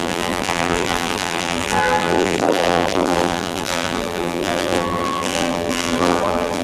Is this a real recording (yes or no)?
no